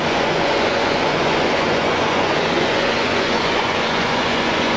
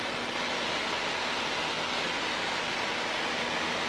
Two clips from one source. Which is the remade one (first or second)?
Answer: first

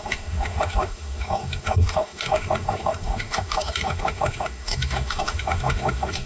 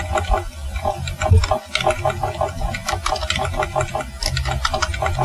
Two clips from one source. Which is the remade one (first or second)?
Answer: first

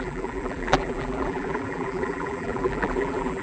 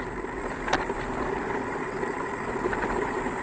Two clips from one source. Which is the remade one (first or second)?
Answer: first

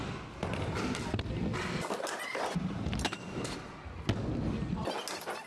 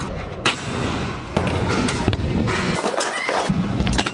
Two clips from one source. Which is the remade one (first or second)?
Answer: second